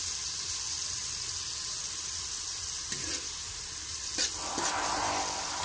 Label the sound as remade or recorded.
recorded